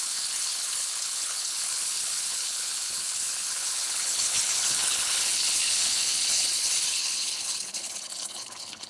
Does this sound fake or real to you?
fake